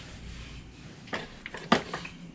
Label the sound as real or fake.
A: real